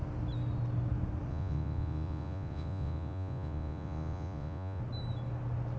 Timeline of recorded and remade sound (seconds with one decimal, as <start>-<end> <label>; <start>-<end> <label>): 0.0-1.3 recorded; 1.3-4.8 remade; 4.8-5.8 recorded

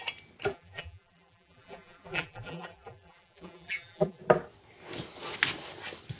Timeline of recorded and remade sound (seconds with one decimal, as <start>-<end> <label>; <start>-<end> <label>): 0.0-0.5 recorded; 0.5-4.2 remade; 4.2-6.2 recorded

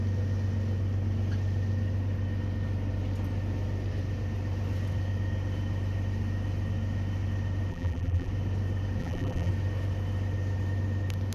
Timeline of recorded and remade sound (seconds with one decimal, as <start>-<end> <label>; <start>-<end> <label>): 0.0-7.7 recorded; 7.7-8.3 remade; 8.3-9.0 recorded; 9.0-9.5 remade; 9.5-11.3 recorded

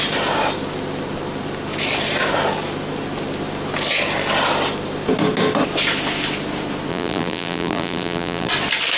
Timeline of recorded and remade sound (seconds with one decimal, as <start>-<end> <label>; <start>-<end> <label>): 0.0-6.9 recorded; 6.9-8.5 remade; 8.5-9.0 recorded

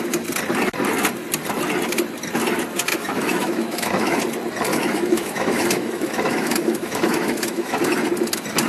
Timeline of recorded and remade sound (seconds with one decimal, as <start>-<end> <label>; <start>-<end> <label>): 0.0-2.9 recorded; 2.9-4.2 remade; 4.2-4.7 recorded; 4.7-7.8 remade; 7.8-8.7 recorded